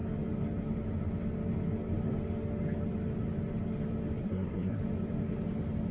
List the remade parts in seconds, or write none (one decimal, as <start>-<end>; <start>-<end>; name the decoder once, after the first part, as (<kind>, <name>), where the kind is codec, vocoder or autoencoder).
4.2-4.8 (codec, SNAC)